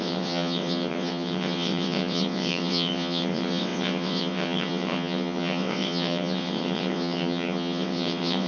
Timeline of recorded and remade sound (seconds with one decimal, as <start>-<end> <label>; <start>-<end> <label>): 0.0-8.5 remade